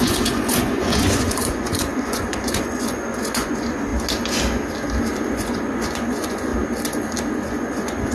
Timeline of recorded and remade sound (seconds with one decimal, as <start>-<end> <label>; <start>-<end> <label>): 0.0-3.9 remade; 3.9-5.3 recorded; 5.3-6.5 remade; 6.5-7.3 recorded; 7.3-8.1 remade